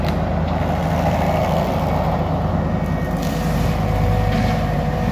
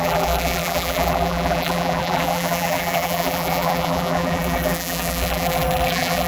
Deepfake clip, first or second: second